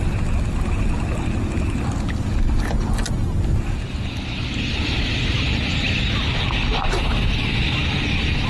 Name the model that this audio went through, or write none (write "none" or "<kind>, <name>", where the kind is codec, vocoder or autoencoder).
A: none